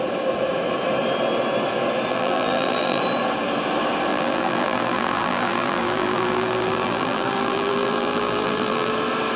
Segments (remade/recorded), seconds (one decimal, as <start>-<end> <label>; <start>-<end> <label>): 0.0-2.1 recorded; 2.1-3.0 remade; 3.0-4.1 recorded; 4.1-8.9 remade; 8.9-9.4 recorded